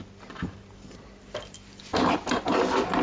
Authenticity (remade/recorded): recorded